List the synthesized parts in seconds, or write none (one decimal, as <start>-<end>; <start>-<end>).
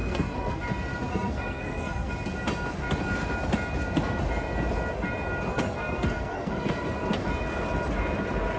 0.0-0.6; 1.1-2.1; 5.5-7.3